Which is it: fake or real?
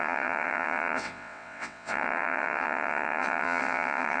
fake